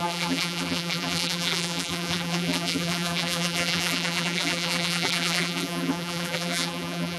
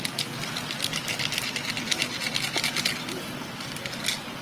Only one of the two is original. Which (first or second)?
second